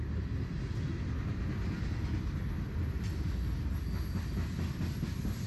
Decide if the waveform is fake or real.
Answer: real